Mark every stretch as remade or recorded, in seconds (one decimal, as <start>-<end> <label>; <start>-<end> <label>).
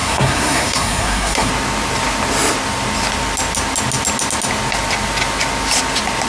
0.0-1.5 remade; 1.5-6.3 recorded